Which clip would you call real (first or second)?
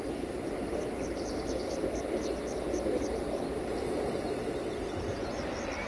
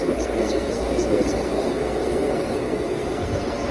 first